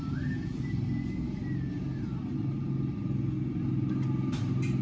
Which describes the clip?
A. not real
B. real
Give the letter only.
B